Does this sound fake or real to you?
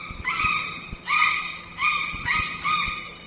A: real